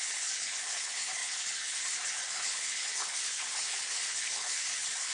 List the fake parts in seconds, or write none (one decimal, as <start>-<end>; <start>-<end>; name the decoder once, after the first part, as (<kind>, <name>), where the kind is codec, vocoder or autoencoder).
0.0-5.1 (codec, HILCodec)